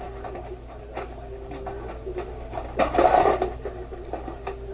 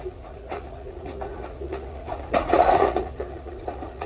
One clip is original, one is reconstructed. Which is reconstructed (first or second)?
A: second